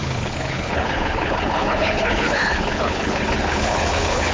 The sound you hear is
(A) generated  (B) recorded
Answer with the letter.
A